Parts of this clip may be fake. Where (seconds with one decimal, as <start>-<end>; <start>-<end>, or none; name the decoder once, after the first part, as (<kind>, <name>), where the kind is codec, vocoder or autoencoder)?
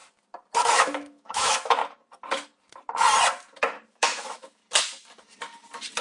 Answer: 0.7-1.8 (autoencoder, DAC-VAE); 3.9-4.6